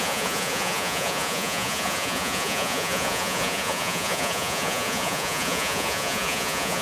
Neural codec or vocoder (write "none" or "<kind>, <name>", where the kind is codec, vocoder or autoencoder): vocoder, Vocos